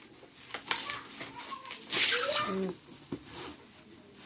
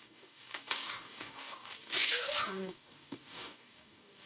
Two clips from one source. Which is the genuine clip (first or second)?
first